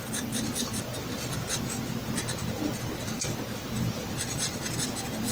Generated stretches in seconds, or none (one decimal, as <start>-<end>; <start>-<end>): none